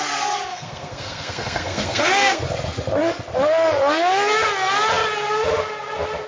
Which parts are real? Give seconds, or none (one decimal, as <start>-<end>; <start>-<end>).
0.0-0.5; 2.4-6.3

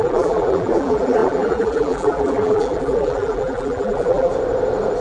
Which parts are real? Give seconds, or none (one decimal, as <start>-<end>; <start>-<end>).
4.3-5.0

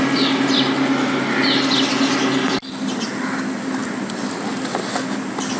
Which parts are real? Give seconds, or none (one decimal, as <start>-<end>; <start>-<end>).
0.0-5.6